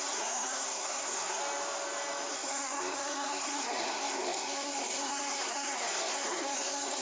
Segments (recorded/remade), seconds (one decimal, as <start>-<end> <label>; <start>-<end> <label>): 0.0-1.4 remade; 1.4-2.3 recorded; 2.3-7.0 remade